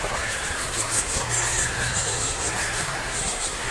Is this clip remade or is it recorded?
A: remade